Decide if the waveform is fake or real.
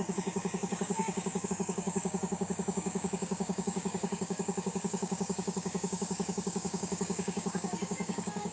fake